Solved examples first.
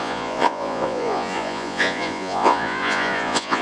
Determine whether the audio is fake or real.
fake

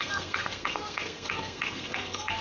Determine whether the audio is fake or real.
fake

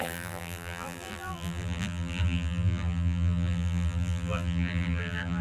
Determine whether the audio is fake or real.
fake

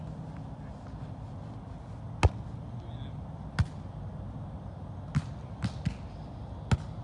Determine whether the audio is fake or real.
real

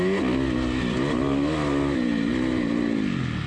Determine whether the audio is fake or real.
real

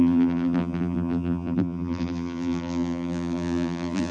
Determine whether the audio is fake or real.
fake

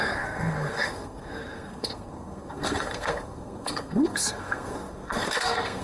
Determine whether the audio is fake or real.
fake